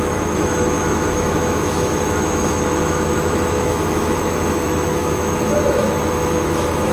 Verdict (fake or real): fake